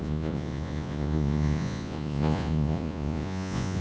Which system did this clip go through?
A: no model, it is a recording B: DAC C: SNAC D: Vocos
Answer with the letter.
D